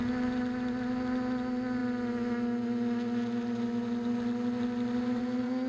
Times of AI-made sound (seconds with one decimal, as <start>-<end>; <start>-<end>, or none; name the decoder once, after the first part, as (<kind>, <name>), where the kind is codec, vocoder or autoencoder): none